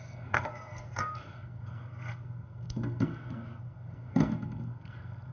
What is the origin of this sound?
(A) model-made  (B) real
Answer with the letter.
A